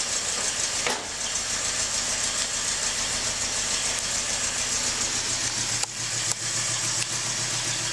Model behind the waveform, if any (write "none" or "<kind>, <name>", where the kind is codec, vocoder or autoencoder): none